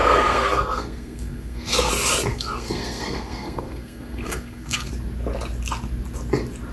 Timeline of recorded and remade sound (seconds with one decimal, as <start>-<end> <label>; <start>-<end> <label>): 0.0-1.9 remade; 1.9-2.3 recorded; 2.3-4.9 remade; 4.9-6.7 recorded

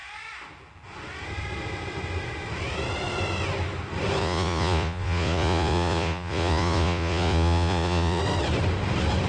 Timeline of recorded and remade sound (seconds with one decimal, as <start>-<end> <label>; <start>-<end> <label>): 0.0-4.2 recorded; 4.2-8.2 remade; 8.2-9.3 recorded

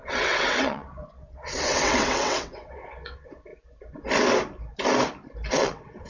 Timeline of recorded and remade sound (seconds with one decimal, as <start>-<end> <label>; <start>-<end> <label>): 0.0-3.5 remade; 3.5-5.5 recorded; 5.5-6.1 remade

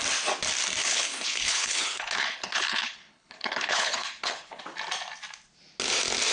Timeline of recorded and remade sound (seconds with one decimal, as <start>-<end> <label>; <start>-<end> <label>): 0.0-0.8 recorded; 0.8-4.6 remade; 4.6-6.3 recorded

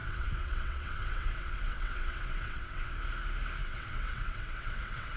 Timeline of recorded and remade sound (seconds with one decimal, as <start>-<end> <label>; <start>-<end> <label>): 0.0-2.9 remade; 2.9-3.6 recorded; 3.6-5.2 remade